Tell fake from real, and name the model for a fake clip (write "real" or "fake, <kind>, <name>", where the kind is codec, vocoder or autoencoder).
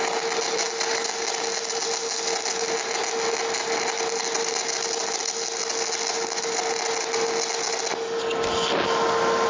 real